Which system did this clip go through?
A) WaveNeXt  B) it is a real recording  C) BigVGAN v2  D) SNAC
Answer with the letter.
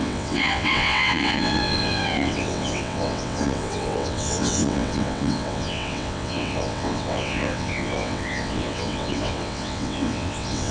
A